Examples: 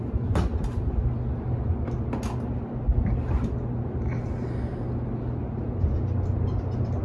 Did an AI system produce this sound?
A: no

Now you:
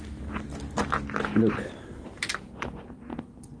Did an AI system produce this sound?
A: no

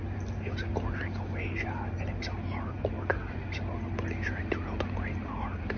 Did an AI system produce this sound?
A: no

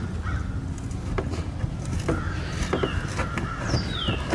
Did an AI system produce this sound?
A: no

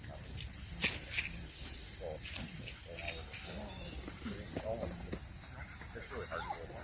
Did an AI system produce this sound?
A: no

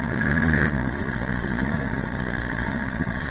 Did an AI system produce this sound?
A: yes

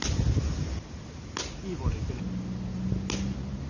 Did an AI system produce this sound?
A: no